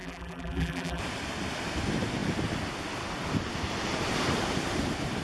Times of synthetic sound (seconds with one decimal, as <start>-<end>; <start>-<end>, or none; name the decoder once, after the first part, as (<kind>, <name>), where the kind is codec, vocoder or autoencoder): 0.0-1.0 (vocoder, BigVGAN v2)